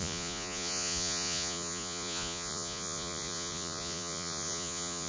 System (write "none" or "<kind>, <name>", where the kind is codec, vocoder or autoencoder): vocoder, Vocos